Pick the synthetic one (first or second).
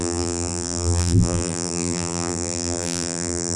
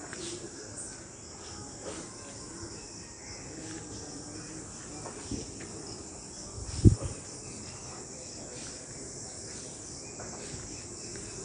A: first